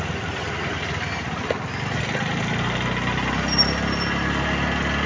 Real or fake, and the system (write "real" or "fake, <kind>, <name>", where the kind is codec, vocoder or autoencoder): real